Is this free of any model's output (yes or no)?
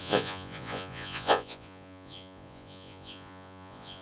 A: no